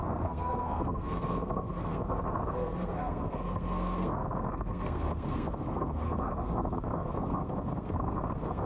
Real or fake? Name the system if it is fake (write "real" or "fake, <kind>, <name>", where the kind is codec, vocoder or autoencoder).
fake, codec, SNAC